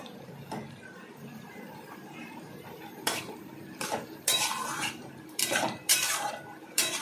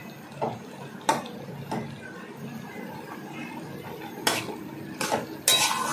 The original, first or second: second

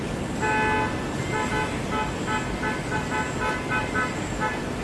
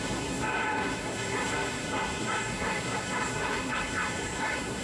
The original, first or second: first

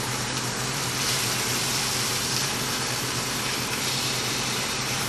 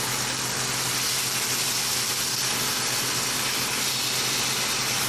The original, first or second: second